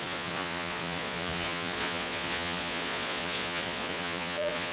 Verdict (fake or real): fake